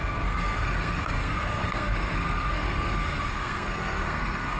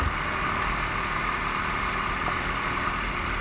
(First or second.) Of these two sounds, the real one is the second